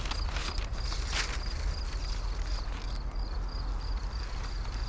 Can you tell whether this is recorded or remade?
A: recorded